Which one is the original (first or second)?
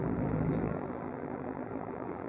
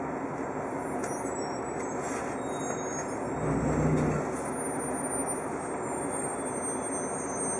second